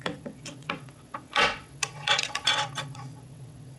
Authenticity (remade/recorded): remade